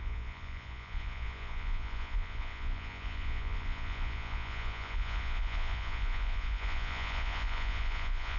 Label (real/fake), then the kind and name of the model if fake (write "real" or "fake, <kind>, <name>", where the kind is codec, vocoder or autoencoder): fake, vocoder, Vocos